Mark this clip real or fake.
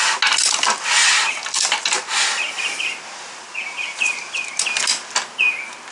real